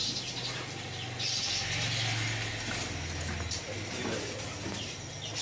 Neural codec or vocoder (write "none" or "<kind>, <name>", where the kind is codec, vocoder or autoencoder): none